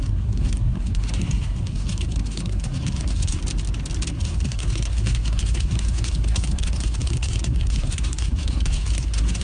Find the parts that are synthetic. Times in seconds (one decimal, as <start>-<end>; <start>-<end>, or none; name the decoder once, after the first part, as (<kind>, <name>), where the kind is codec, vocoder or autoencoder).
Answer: 0.0-3.4 (codec, SNAC); 4.1-9.4